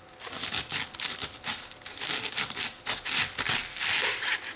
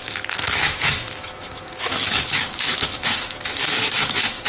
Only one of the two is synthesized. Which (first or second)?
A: second